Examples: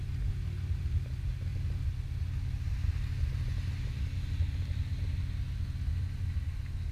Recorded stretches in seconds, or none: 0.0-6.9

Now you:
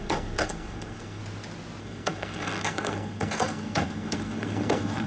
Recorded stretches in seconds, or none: 1.2-1.8

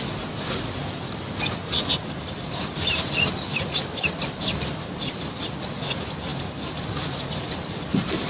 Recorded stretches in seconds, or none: 0.0-8.3

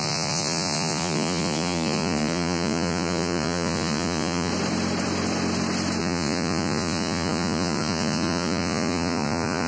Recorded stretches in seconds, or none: 4.5-6.0